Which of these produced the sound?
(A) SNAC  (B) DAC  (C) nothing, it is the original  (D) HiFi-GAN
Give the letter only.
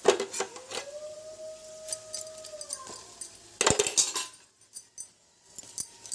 C